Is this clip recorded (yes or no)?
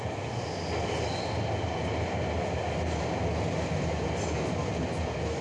yes